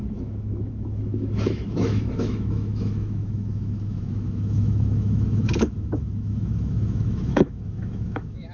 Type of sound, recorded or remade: remade